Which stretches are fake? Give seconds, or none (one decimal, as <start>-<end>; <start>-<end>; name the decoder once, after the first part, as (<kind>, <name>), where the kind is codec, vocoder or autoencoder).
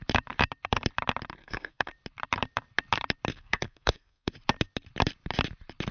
1.4-1.9 (codec, SNAC); 3.3-4.3